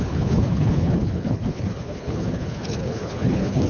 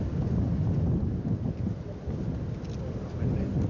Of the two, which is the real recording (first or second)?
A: second